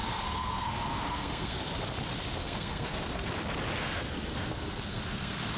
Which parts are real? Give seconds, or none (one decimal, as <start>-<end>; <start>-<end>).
1.7-2.4; 3.3-3.8